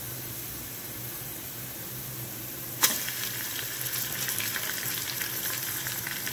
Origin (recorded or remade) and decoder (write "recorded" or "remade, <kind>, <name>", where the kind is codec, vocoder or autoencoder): recorded